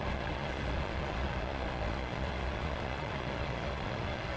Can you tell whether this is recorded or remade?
remade